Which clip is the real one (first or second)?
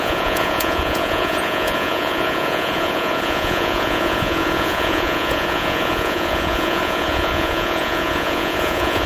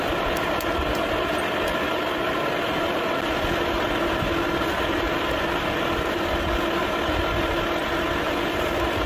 second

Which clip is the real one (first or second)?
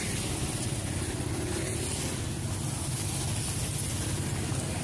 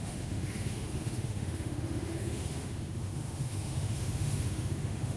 first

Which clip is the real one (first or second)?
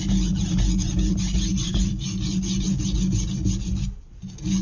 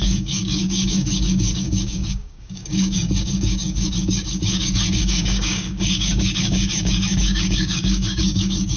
first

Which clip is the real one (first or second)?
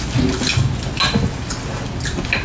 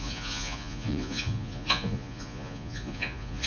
first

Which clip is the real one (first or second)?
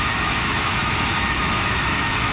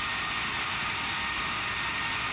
second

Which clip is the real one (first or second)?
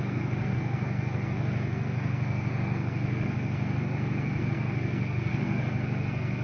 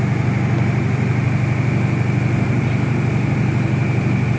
second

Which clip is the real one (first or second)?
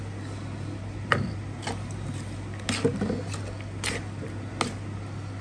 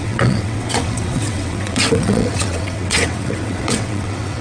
first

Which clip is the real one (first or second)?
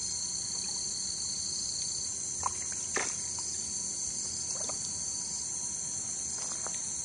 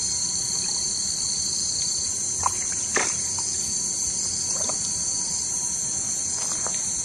first